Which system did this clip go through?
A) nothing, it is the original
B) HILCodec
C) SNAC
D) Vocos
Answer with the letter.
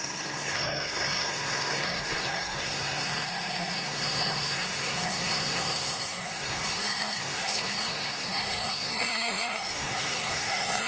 C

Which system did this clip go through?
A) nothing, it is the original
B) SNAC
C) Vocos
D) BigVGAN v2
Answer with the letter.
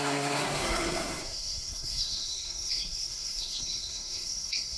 B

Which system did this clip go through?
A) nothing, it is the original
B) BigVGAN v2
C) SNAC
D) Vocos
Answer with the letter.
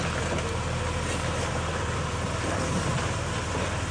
A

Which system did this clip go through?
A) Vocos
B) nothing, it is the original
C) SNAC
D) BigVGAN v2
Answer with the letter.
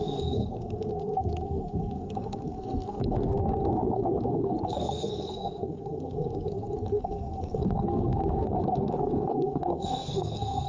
C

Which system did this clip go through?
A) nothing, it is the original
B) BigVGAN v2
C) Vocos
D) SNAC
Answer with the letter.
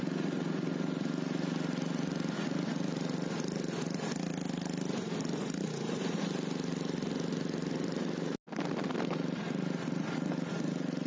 A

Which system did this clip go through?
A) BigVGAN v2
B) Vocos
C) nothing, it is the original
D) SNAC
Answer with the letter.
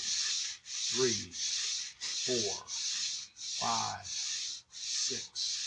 C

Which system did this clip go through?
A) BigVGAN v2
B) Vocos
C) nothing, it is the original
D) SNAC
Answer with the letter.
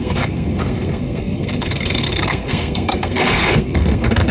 D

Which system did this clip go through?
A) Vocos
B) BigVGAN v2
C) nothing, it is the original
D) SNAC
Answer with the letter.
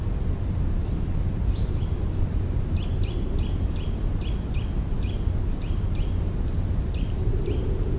C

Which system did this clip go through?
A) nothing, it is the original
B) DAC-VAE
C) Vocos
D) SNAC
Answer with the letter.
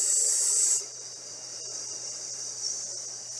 A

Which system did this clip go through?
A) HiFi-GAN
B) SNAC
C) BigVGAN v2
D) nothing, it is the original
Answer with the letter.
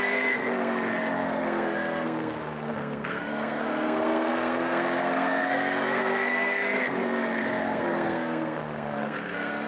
B